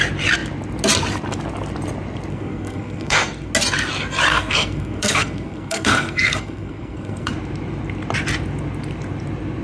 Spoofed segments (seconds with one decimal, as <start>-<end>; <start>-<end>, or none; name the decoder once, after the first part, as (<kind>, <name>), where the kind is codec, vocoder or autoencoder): 2.3-3.5 (codec, SNAC); 4.3-7.3